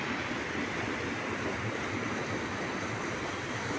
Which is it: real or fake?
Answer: real